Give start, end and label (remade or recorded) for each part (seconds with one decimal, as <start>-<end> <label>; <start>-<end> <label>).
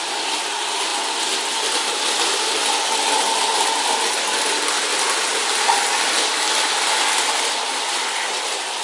0.0-8.8 recorded